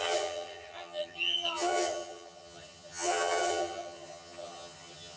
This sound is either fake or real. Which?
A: fake